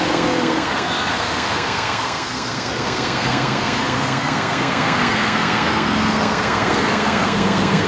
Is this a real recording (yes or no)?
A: no